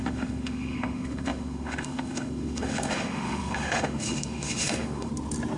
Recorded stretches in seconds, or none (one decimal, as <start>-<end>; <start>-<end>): 5.1-5.6